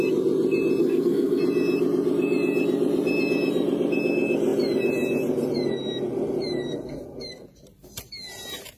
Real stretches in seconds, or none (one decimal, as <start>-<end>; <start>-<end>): 0.0-0.8; 1.4-8.8